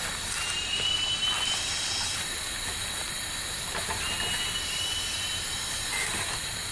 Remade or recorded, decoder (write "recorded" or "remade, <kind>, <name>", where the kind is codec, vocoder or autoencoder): recorded